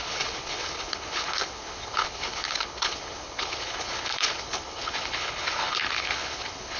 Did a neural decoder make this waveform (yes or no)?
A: yes